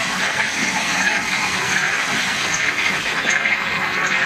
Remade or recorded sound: remade